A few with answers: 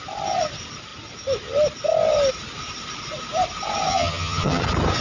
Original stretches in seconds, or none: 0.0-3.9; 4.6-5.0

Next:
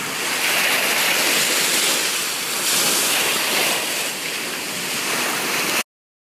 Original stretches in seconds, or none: 0.0-6.3

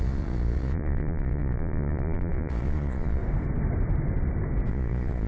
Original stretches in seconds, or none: 3.2-4.7

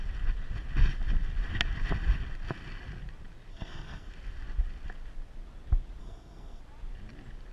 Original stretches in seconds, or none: 0.0-3.5; 4.1-6.0; 6.6-7.5

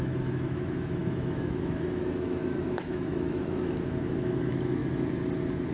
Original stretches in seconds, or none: 4.8-5.7

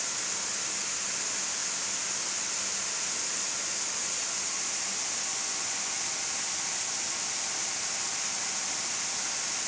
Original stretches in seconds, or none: 0.0-5.3; 5.9-9.7

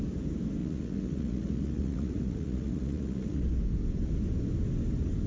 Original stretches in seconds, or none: 0.0-0.6; 3.4-5.3